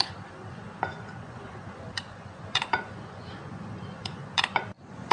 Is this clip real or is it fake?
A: fake